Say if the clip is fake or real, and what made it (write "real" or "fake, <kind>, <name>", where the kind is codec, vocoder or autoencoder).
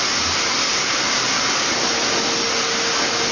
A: real